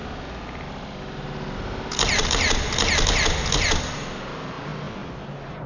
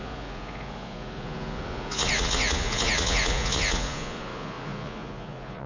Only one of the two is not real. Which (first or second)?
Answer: second